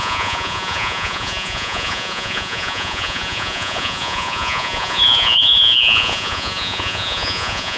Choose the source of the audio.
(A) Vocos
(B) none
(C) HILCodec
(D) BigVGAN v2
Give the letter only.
A